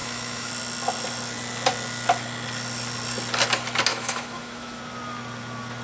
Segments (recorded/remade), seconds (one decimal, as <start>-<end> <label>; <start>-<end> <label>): 0.0-0.5 remade; 0.5-3.9 recorded; 3.9-4.8 remade; 4.8-5.8 recorded